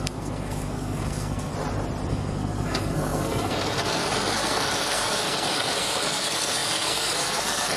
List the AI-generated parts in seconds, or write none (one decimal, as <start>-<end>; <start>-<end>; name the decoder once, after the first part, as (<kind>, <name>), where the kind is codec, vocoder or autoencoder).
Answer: 0.0-1.5 (codec, SNAC); 2.1-7.8